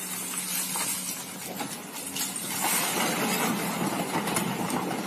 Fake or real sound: real